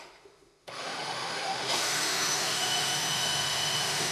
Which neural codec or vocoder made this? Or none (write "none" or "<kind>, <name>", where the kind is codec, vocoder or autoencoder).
autoencoder, DAC-VAE